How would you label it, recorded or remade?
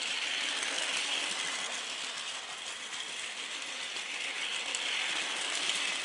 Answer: recorded